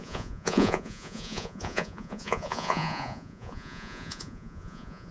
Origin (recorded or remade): remade